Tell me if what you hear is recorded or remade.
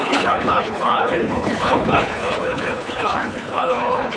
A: remade